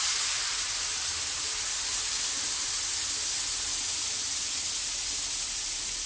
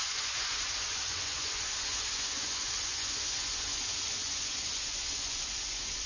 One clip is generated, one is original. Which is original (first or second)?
first